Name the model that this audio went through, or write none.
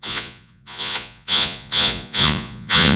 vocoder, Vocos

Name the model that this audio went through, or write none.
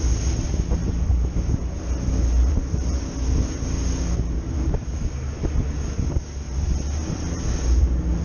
none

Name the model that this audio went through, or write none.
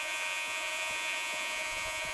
vocoder, Vocos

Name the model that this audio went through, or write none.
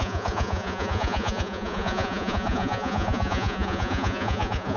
vocoder, Vocos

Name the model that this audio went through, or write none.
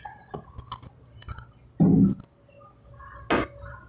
none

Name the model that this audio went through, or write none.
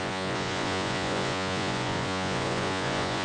vocoder, Vocos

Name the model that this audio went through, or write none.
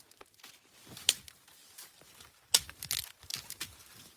none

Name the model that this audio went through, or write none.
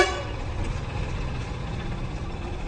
vocoder, Vocos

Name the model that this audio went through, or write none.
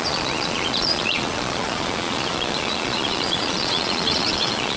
vocoder, Vocos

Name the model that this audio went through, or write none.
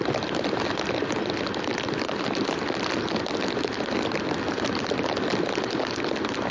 none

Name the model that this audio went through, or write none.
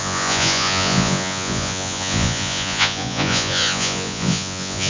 vocoder, Vocos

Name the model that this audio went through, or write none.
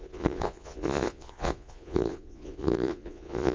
vocoder, Vocos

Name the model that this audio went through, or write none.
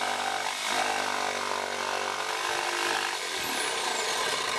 none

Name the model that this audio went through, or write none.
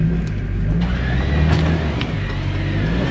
none